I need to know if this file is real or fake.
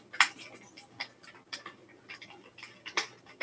real